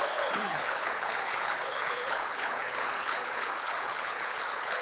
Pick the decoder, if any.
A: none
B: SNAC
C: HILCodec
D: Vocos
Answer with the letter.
C